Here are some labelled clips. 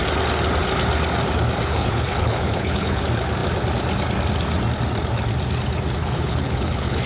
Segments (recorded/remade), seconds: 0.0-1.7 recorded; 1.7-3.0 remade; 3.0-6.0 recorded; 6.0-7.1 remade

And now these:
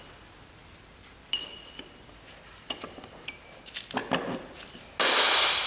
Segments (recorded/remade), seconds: 0.0-0.6 recorded; 0.6-1.8 remade; 1.8-5.7 recorded

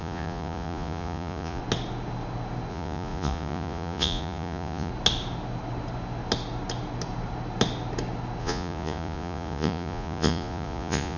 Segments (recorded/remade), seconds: 0.0-1.6 remade; 1.6-2.7 recorded; 2.7-4.9 remade; 4.9-8.4 recorded; 8.4-11.2 remade